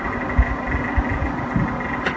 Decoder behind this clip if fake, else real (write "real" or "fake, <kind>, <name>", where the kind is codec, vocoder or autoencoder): real